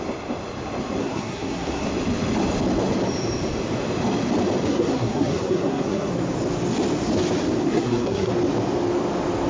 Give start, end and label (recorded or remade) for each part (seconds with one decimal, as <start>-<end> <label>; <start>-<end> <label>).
0.0-1.0 recorded; 1.0-1.9 remade; 1.9-4.7 recorded; 4.7-6.1 remade; 6.1-7.6 recorded; 7.6-8.3 remade; 8.3-9.5 recorded